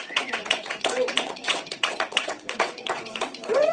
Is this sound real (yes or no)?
no